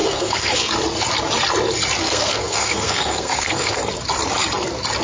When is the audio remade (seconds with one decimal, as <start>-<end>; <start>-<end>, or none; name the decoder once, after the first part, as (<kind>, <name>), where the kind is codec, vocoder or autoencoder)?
0.0-0.7 (codec, SNAC); 2.0-3.8